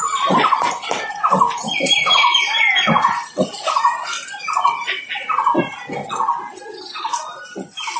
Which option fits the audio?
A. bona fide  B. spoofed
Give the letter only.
A